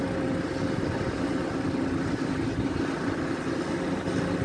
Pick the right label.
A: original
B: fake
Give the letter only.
A